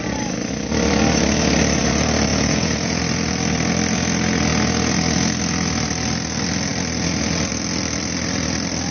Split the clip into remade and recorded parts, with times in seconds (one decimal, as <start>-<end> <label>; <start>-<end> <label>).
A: 0.0-2.3 recorded; 2.3-3.0 remade; 3.0-8.9 recorded